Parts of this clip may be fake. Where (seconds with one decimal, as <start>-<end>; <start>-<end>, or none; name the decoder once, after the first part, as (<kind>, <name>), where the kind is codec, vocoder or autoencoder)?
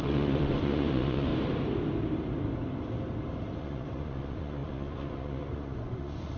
0.0-1.3 (vocoder, Vocos); 3.6-6.4